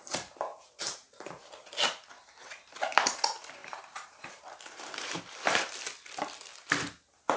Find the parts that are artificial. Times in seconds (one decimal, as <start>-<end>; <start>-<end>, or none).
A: 0.5-1.4; 3.6-5.2